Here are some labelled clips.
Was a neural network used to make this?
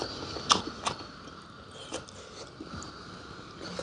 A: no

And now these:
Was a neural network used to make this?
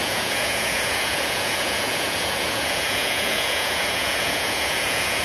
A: yes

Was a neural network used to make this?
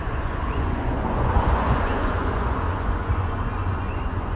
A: yes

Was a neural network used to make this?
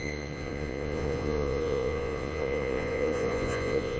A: yes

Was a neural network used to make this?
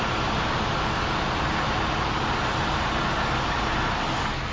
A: no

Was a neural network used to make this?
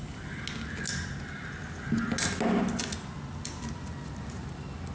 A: no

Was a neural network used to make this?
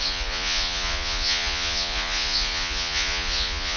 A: yes